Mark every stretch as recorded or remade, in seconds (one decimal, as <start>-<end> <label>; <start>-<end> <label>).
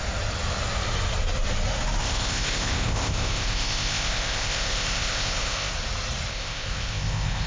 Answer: 0.0-2.0 recorded; 2.0-5.7 remade; 5.7-6.3 recorded; 6.3-7.5 remade